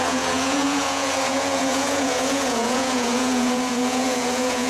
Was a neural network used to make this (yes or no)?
yes